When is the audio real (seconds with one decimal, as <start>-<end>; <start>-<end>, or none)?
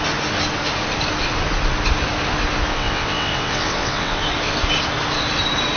0.0-2.7; 4.2-5.8